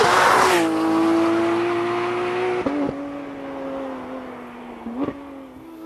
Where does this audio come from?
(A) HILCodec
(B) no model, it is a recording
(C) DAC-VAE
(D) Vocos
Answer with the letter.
B